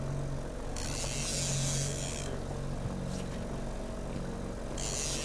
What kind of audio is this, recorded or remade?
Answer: recorded